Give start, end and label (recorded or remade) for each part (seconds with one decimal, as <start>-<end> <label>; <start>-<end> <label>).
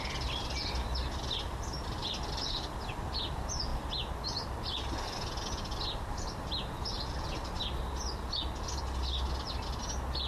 0.0-10.3 recorded